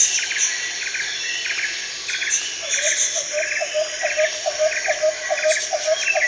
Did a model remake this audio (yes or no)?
no